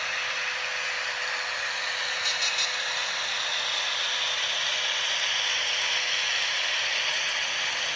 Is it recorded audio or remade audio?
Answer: recorded